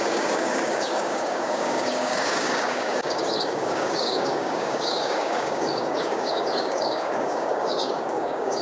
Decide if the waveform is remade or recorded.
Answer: remade